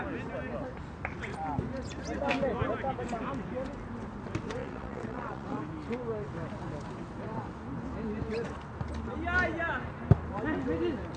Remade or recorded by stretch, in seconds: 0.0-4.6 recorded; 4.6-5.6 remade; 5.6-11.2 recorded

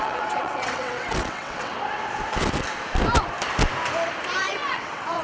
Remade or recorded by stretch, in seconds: 0.0-1.7 remade; 1.7-4.4 recorded; 4.4-5.2 remade